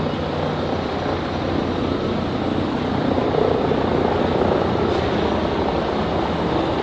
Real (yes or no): yes